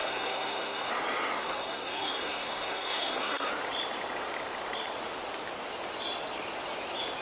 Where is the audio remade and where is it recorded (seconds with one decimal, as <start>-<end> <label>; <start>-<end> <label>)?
0.0-0.9 remade; 0.9-1.4 recorded; 1.4-3.5 remade; 3.5-7.2 recorded